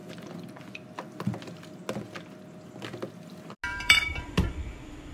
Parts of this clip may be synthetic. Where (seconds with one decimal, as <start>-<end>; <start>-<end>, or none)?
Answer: 3.7-4.2